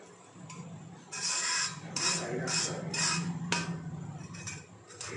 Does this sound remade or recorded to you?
recorded